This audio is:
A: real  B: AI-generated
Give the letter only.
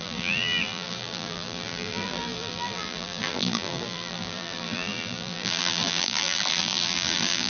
B